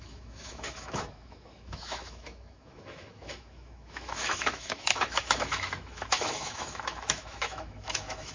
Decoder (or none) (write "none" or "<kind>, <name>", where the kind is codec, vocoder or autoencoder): autoencoder, DAC-VAE